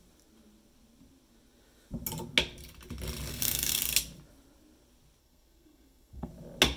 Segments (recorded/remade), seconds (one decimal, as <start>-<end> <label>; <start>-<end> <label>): 0.0-3.3 recorded; 3.3-3.8 remade; 3.8-5.2 recorded; 5.2-6.3 remade; 6.3-6.8 recorded